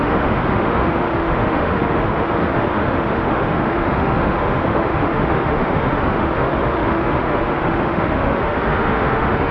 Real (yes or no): no